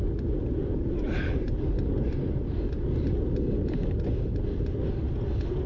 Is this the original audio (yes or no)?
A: yes